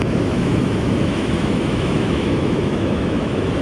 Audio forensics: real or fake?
fake